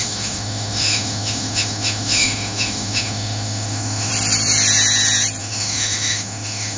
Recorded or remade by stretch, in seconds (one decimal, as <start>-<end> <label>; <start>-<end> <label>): 0.0-4.1 remade; 4.1-5.4 recorded; 5.4-6.8 remade